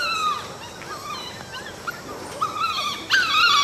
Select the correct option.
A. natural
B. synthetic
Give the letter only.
A